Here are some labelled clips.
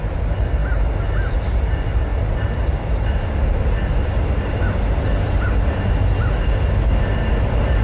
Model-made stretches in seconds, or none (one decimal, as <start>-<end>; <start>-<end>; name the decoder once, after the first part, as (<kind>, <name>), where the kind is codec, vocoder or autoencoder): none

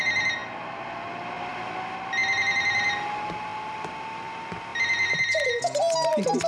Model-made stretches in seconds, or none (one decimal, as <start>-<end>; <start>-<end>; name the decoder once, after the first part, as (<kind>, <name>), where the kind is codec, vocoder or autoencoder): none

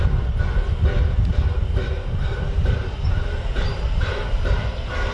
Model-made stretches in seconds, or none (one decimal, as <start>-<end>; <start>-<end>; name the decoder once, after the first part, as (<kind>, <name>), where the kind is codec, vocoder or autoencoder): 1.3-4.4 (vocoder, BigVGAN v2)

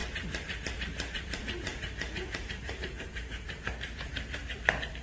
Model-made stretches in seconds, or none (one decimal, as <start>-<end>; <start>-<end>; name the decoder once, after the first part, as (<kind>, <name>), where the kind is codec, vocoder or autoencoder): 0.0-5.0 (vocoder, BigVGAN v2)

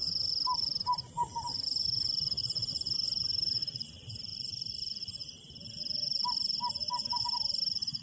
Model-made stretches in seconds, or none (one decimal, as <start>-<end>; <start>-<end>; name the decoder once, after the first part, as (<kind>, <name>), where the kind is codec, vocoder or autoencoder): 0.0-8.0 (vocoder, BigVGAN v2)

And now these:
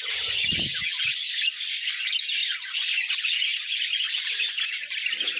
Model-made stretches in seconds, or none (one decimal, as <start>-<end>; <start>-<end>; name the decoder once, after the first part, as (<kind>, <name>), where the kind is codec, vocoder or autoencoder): 1.1-1.7 (vocoder, BigVGAN v2); 2.4-4.7